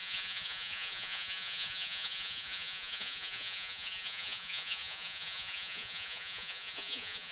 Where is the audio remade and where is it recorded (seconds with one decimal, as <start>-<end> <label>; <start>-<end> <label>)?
0.0-7.3 remade